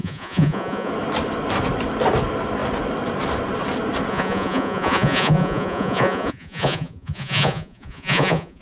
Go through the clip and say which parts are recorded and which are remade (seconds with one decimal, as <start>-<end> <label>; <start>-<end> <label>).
0.0-0.9 remade; 0.9-4.1 recorded; 4.1-8.6 remade